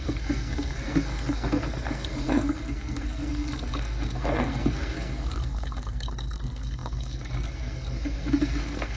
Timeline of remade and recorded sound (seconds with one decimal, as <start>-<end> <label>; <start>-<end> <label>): 0.0-9.0 remade